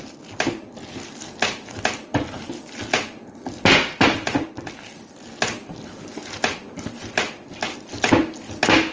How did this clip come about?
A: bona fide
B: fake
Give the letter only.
A